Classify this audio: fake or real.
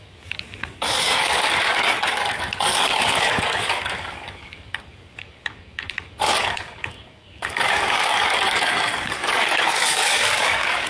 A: fake